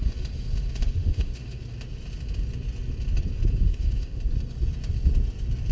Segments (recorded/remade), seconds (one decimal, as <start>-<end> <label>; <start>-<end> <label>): 0.0-1.0 recorded; 1.0-1.6 remade; 1.6-3.7 recorded; 3.7-4.2 remade; 4.2-5.7 recorded